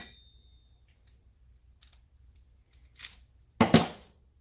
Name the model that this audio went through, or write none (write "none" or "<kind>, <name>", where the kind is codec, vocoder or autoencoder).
none